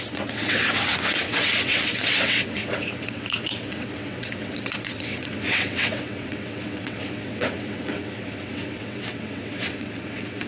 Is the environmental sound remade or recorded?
remade